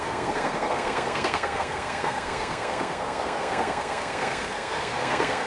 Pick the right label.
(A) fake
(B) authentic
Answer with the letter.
A